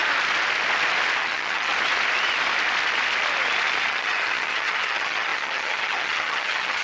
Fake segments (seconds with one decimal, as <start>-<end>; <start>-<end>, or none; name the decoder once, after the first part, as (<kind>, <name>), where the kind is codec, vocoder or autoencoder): 1.2-1.7 (vocoder, HiFi-GAN); 3.9-6.8